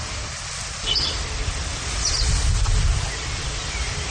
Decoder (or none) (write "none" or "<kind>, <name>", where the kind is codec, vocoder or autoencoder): none